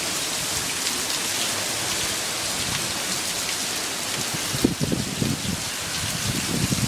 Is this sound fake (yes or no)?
no